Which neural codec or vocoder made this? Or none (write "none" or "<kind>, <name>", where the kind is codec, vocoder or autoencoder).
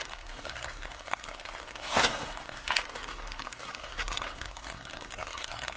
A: codec, SNAC